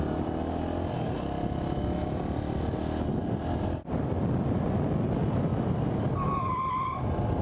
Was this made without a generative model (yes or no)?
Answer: yes